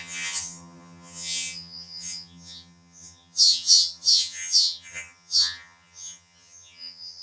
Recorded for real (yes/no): no